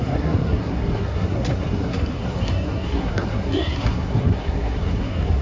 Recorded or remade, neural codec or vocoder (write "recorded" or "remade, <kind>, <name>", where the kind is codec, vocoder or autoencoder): remade, codec, SNAC